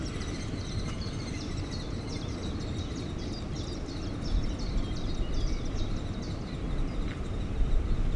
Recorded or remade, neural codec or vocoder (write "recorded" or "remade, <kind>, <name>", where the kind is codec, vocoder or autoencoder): remade, vocoder, BigVGAN v2